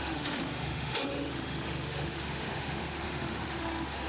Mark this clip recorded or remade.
remade